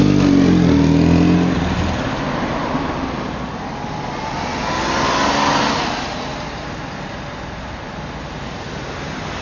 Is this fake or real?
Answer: real